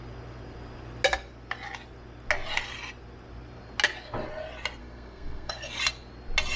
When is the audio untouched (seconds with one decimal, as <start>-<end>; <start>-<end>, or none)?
0.0-4.8; 5.8-6.6